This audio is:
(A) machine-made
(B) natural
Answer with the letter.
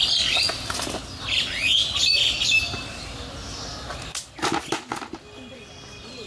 B